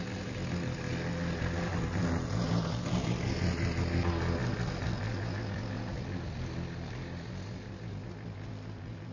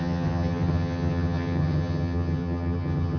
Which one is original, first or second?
first